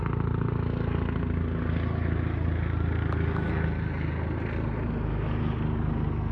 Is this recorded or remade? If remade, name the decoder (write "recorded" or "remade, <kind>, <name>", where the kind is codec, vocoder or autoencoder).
recorded